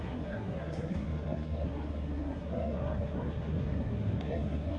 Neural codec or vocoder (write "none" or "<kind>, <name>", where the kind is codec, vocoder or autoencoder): codec, SNAC